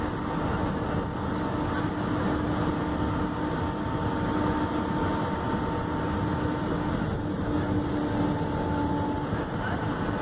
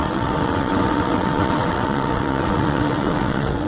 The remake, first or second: second